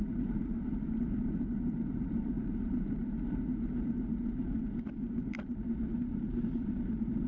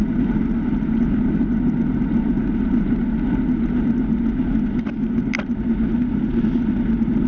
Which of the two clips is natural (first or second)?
second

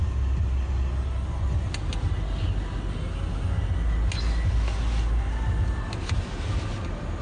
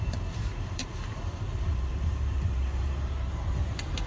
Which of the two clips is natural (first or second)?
first